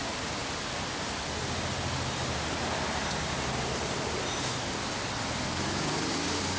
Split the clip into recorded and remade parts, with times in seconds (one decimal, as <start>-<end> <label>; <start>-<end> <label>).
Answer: 0.0-6.6 recorded